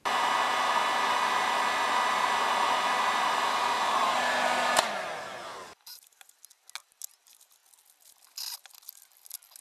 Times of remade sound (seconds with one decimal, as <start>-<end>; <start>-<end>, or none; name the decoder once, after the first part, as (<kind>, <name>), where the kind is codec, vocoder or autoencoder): none

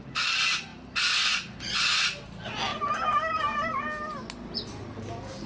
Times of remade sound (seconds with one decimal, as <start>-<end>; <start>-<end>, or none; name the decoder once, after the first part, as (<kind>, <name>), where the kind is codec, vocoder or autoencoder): none

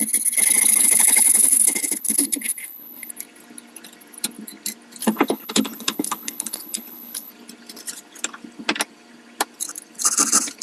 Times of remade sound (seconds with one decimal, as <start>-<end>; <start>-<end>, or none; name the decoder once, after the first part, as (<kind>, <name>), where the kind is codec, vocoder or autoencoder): 0.8-3.1 (codec, HILCodec); 5.0-7.3

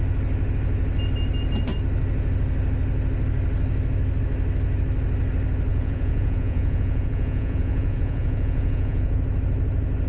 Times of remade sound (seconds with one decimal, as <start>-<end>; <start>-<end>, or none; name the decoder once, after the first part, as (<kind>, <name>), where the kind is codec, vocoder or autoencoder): 5.7-9.2 (vocoder, Vocos)

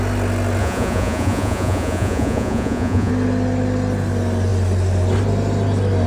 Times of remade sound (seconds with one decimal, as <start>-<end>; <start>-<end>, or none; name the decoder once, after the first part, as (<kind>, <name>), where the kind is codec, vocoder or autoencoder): 0.6-3.1 (vocoder, Vocos)

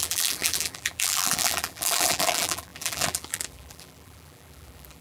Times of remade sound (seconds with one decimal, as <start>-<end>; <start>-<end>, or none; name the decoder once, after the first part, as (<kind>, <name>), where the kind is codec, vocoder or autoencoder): 0.0-5.0 (vocoder, BigVGAN v2)

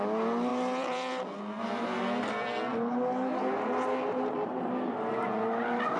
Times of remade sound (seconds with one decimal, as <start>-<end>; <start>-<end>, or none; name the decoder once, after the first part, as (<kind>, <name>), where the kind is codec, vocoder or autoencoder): 0.5-1.6 (vocoder, BigVGAN v2)

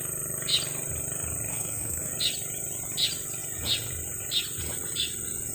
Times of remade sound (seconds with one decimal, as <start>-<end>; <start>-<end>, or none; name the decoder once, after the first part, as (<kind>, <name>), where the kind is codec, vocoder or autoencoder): 1.5-2.1 (codec, SNAC)